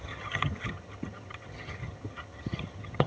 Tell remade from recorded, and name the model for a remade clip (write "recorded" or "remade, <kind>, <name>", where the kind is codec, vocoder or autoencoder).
remade, vocoder, HiFi-GAN